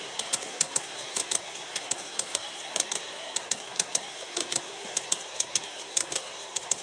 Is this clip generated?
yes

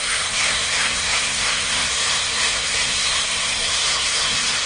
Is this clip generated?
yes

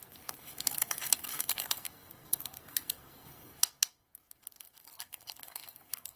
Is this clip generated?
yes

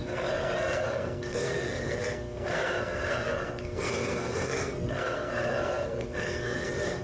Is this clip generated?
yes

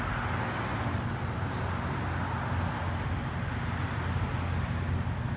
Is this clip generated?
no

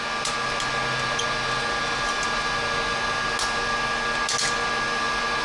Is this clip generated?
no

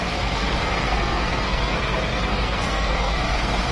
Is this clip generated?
yes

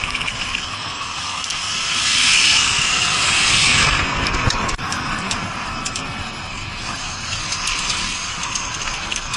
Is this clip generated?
yes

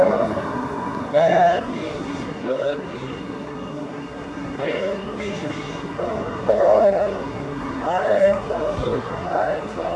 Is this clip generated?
yes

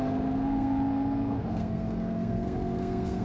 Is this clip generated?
yes